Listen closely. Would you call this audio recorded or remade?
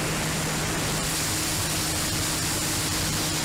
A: recorded